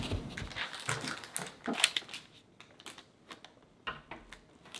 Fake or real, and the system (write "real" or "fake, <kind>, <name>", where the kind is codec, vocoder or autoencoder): real